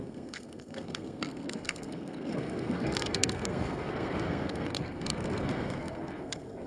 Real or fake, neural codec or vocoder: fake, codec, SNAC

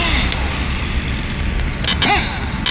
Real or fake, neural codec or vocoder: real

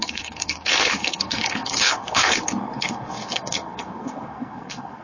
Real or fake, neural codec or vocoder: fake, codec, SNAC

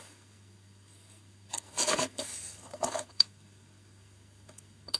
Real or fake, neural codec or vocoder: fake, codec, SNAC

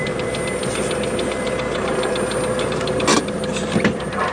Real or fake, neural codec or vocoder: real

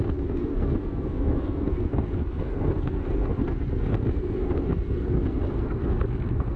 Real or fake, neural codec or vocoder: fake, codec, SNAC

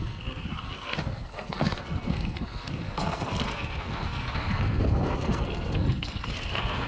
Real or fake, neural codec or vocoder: fake, codec, SNAC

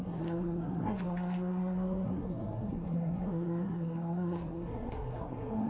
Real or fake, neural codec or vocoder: fake, codec, SNAC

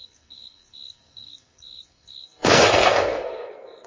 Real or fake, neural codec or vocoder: fake, codec, SNAC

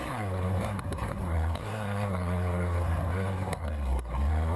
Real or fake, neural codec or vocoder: fake, codec, SNAC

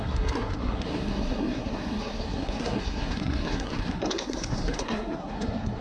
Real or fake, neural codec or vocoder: fake, codec, SNAC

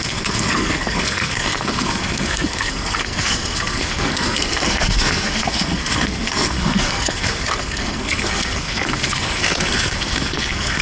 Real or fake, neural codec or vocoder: fake, codec, SNAC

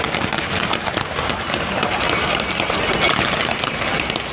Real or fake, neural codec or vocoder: real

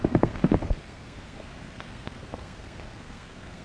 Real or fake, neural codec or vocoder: fake, codec, SNAC